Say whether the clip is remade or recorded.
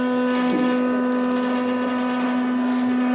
recorded